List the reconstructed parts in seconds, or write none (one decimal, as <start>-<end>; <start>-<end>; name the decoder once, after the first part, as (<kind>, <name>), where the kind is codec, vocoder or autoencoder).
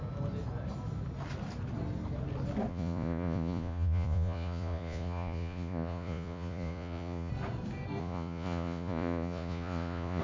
2.7-7.3 (vocoder, Vocos); 8.0-10.2